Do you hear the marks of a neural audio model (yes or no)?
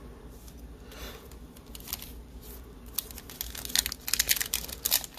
no